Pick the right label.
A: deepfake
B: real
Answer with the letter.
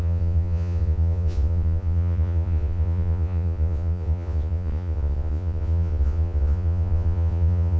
A